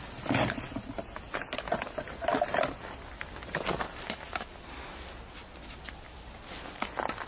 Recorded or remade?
recorded